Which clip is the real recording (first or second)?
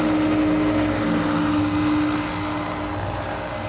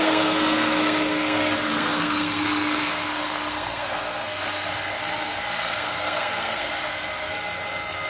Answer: first